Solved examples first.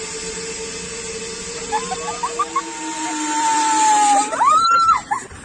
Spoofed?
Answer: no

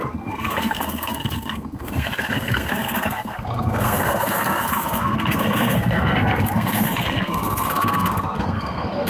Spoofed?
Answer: yes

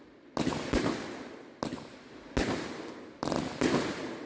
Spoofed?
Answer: no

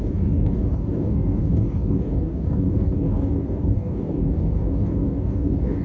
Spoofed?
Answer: yes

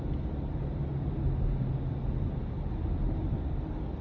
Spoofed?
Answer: no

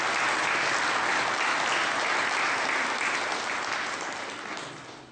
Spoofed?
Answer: no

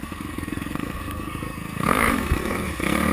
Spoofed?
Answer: yes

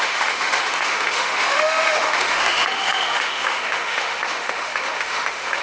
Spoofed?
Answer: yes